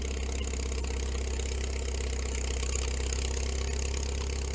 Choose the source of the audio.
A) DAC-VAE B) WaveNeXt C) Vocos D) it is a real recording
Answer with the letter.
D